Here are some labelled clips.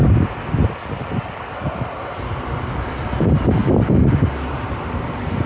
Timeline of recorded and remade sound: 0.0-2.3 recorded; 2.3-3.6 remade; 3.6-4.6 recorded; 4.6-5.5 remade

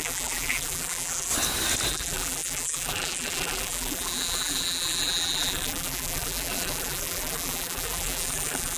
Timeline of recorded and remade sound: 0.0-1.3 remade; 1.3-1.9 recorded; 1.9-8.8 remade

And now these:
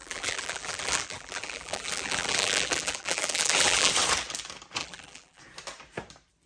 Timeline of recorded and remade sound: 0.0-3.9 remade; 3.9-4.8 recorded; 4.8-5.4 remade; 5.4-6.5 recorded